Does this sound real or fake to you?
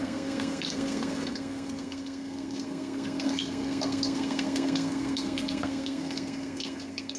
fake